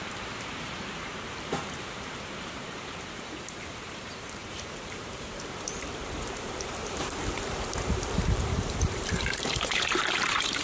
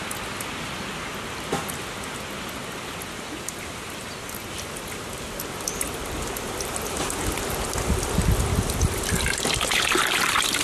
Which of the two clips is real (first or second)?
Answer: second